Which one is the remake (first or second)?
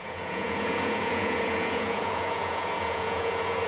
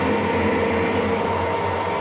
first